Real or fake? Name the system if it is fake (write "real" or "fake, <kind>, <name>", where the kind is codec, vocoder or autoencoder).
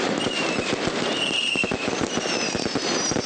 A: fake, vocoder, BigVGAN v2